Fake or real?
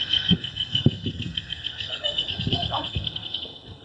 fake